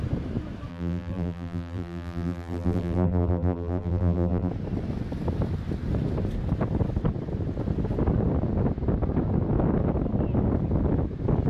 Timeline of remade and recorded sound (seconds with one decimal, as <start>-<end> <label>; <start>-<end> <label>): 0.0-0.7 recorded; 0.7-4.5 remade; 4.5-11.5 recorded